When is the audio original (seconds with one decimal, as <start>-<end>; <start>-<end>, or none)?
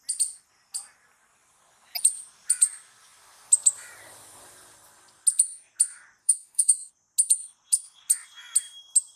0.0-6.2; 6.9-9.2